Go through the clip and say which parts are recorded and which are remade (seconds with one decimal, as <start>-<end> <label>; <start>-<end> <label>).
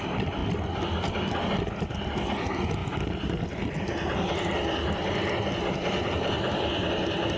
0.0-7.4 recorded